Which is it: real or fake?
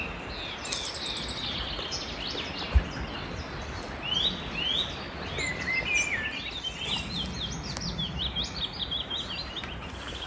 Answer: real